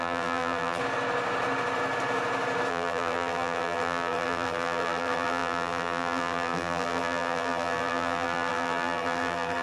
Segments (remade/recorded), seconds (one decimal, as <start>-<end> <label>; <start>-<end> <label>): 0.0-0.8 remade; 0.8-2.7 recorded; 2.7-9.6 remade